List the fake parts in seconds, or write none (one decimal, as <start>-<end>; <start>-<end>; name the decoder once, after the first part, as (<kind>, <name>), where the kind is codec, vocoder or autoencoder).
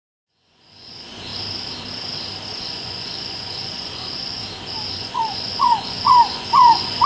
0.0-1.3 (vocoder, Vocos); 2.6-4.4; 4.9-7.1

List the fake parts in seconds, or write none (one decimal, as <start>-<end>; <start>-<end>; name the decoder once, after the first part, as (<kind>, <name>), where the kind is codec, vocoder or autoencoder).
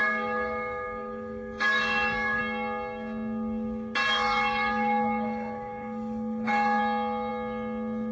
0.0-2.4 (codec, DAC); 4.0-6.8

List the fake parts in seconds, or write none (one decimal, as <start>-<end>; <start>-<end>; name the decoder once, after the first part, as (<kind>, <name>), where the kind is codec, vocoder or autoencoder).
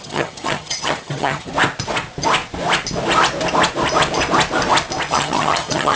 0.0-1.5 (vocoder, HiFi-GAN); 5.1-6.0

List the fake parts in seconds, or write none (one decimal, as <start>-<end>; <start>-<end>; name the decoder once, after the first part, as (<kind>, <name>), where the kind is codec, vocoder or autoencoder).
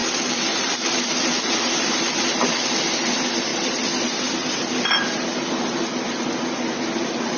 none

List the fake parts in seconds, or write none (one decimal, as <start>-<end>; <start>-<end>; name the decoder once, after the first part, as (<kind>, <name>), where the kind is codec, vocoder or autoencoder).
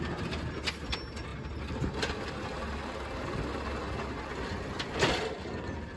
none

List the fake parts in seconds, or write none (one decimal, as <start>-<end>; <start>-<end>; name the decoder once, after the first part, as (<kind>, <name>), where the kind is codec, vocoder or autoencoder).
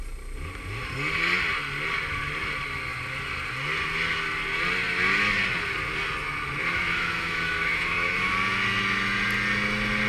6.7-8.3 (autoencoder, DAC-VAE)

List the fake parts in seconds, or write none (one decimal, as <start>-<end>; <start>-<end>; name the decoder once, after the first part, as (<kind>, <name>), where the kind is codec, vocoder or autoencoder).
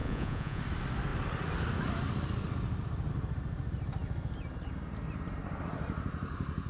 0.0-0.6 (vocoder, Vocos)